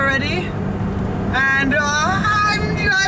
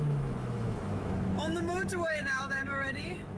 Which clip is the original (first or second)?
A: first